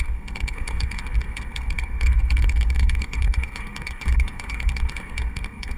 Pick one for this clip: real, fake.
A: fake